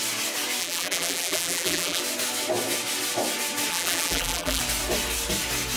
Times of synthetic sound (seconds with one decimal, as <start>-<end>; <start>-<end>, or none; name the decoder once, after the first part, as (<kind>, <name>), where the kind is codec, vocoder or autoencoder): 0.6-2.0 (vocoder, BigVGAN v2); 3.7-4.6